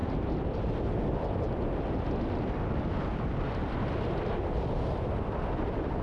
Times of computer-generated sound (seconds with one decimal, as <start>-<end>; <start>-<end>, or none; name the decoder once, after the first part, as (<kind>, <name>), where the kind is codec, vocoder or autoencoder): none